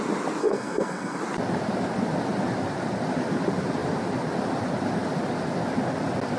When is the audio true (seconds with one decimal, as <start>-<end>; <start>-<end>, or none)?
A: 0.0-0.4; 1.2-6.4